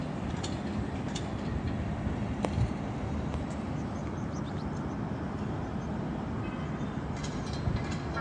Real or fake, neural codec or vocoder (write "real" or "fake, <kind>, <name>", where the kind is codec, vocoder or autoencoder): real